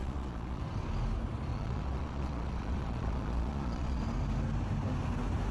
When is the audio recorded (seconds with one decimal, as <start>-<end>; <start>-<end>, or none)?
0.6-1.5; 4.0-5.5

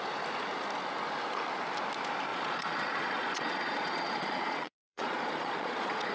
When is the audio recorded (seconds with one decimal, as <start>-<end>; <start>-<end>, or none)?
0.0-2.3